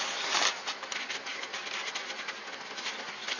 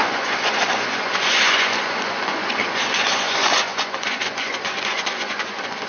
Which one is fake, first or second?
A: second